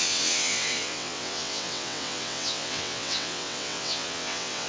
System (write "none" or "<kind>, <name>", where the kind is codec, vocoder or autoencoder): vocoder, WaveNeXt